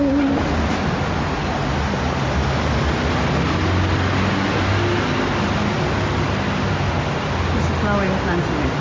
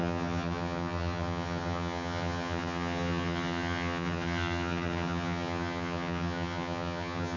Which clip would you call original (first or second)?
first